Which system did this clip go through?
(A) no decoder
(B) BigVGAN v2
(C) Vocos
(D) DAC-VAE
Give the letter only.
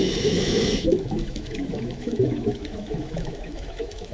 D